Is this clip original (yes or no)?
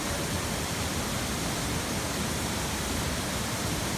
yes